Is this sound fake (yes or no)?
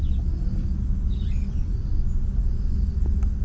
no